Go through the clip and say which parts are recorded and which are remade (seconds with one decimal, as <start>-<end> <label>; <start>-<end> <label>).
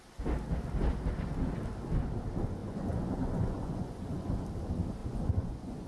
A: 0.0-2.6 recorded; 2.6-4.3 remade; 4.3-5.0 recorded; 5.0-5.9 remade